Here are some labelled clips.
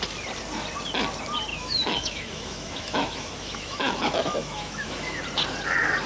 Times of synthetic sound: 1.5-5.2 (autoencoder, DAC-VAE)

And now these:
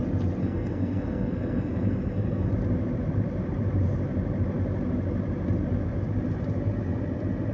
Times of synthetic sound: 0.4-2.5 (codec, SNAC)

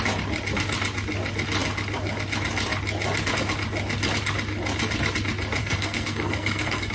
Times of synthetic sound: 5.6-6.9 (codec, SNAC)

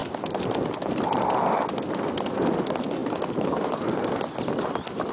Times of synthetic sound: none